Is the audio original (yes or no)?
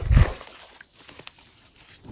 yes